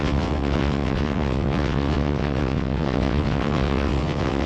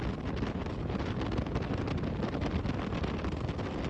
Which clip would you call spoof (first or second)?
first